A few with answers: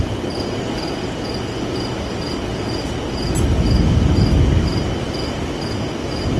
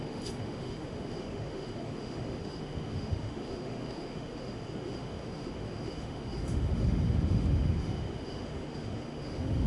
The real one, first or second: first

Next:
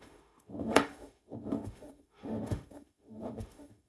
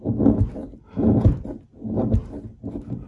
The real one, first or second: second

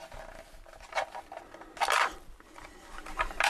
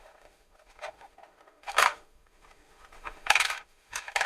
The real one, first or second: first